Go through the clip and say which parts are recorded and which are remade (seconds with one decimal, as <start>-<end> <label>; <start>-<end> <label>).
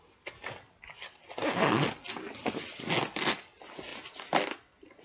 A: 0.0-5.0 recorded